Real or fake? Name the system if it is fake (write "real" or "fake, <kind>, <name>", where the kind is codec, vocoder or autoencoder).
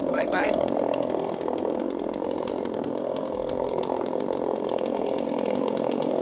fake, codec, SNAC